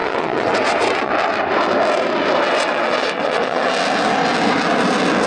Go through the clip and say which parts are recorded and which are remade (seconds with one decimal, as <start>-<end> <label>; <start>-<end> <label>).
0.0-1.1 remade; 1.1-2.5 recorded; 2.5-3.7 remade; 3.7-5.3 recorded